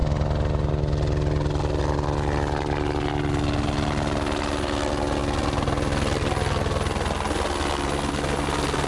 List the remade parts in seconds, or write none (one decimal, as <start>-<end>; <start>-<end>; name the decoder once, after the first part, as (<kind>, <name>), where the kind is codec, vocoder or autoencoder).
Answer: none